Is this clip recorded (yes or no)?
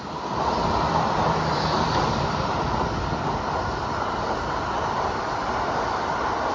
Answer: yes